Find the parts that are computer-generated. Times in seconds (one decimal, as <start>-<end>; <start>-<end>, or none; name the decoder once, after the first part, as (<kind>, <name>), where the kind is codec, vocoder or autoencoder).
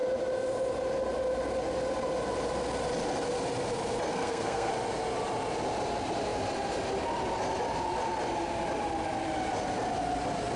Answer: 4.1-4.7 (codec, SNAC)